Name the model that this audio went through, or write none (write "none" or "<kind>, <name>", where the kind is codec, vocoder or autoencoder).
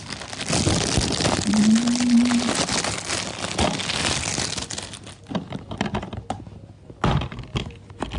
none